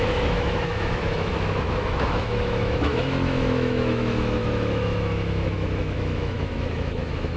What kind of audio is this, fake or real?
fake